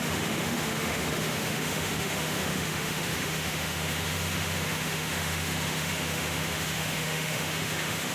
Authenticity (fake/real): fake